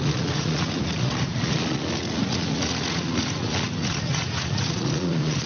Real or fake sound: fake